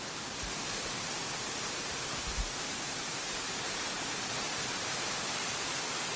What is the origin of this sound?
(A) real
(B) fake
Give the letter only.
B